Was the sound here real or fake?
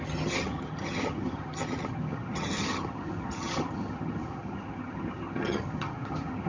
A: fake